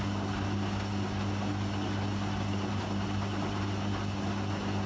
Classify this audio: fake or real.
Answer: real